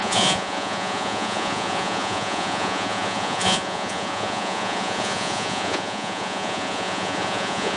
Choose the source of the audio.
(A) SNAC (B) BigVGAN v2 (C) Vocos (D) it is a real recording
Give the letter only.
C